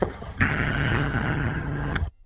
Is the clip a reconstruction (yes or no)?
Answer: yes